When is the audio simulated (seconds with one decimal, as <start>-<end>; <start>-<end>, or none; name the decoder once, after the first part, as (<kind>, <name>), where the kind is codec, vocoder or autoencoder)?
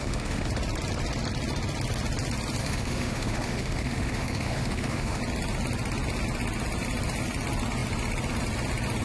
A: 0.0-0.5 (autoencoder, DAC-VAE); 2.6-5.2